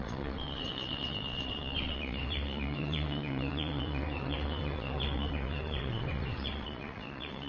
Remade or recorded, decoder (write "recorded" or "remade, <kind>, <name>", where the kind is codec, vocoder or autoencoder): remade, vocoder, WaveNeXt